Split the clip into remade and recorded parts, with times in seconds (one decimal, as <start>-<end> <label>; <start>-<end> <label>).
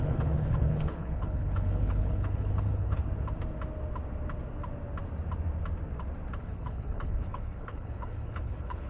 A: 0.0-3.0 remade; 3.0-6.4 recorded; 6.4-8.9 remade